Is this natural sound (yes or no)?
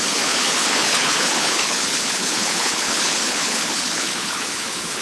no